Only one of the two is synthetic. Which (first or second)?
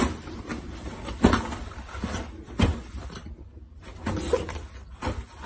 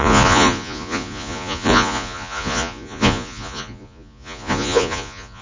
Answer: second